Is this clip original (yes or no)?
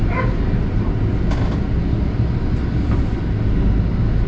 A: yes